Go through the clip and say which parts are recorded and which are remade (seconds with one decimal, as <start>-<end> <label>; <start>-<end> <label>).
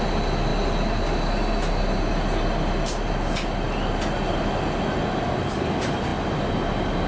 0.0-7.1 recorded